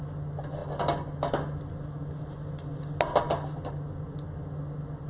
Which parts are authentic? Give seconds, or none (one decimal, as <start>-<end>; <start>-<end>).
0.0-5.1